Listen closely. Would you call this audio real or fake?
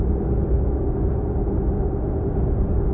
real